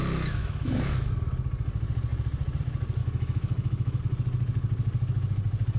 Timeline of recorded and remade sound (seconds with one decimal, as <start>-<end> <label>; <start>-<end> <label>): 0.0-0.4 recorded; 0.4-1.1 remade; 1.1-3.0 recorded; 3.0-4.0 remade; 4.0-5.8 recorded